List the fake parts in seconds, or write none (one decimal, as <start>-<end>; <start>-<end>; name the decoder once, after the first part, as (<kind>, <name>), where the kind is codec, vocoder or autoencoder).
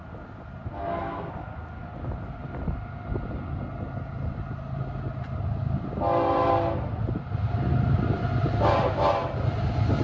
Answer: 0.8-1.3 (codec, SNAC)